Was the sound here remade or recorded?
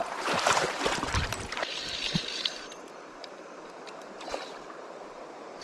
remade